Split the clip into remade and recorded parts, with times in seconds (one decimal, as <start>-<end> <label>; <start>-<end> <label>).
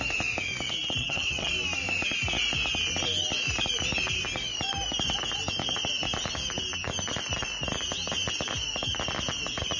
0.0-1.0 recorded; 1.0-1.5 remade; 1.5-9.8 recorded